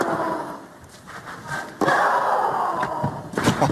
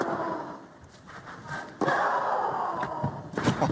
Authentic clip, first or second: first